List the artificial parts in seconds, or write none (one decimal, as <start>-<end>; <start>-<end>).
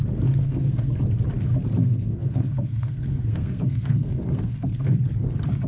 0.4-0.9; 1.8-5.0